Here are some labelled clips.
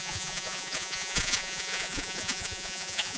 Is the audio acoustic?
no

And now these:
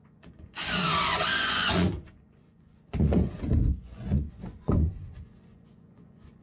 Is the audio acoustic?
no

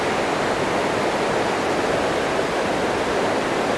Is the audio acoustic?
yes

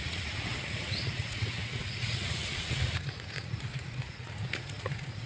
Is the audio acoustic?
no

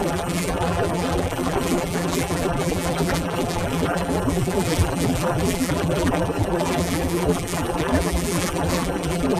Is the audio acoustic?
no